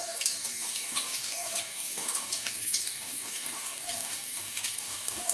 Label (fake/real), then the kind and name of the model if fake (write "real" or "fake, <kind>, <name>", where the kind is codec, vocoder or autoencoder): fake, codec, DAC